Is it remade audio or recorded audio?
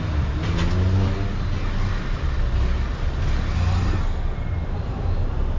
recorded